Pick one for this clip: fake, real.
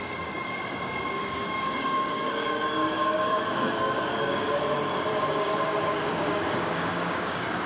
fake